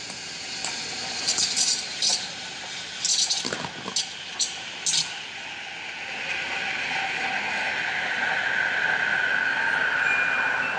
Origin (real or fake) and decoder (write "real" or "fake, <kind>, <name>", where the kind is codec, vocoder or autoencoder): real